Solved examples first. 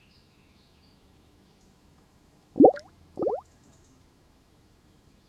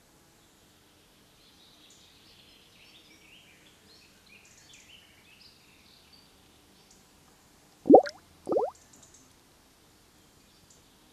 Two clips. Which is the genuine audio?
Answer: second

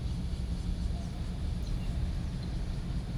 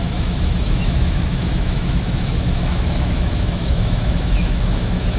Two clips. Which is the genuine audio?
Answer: first